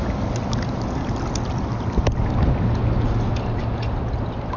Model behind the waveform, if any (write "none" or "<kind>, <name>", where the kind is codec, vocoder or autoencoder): none